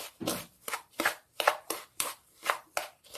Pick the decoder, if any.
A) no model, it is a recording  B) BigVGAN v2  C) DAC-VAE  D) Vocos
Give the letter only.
B